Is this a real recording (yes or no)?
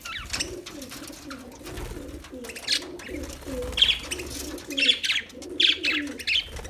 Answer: yes